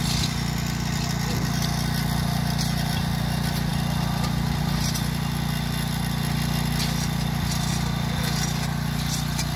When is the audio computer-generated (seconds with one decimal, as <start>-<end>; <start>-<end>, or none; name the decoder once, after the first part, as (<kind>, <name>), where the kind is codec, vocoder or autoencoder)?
none